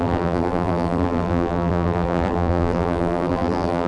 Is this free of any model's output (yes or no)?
no